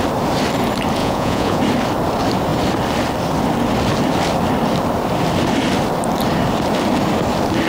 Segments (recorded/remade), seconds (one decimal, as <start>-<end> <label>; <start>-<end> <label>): 0.0-1.0 recorded; 1.0-1.6 remade; 1.6-7.7 recorded